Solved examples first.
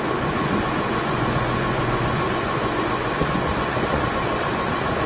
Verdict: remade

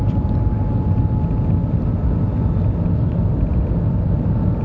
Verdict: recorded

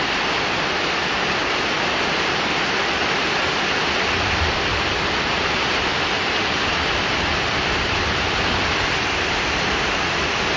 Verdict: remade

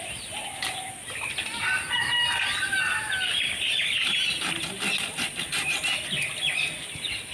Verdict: recorded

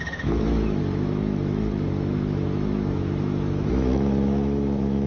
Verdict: remade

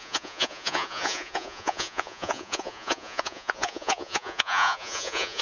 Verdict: remade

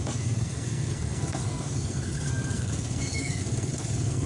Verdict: remade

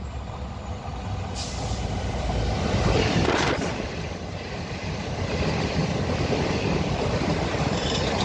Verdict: remade